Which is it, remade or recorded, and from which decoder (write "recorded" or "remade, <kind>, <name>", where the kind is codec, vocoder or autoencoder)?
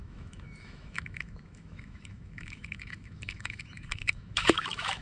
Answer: remade, autoencoder, DAC-VAE